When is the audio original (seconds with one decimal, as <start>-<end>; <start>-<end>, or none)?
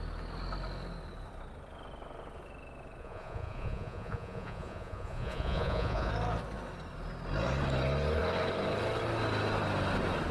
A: 0.0-3.0; 6.1-10.3